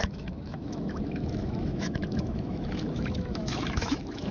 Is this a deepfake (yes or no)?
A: yes